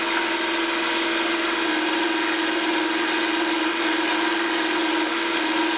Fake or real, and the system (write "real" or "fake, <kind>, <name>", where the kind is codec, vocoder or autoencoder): real